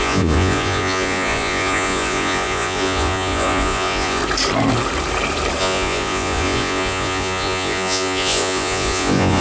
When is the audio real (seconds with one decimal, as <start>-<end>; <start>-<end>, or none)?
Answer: 4.2-5.6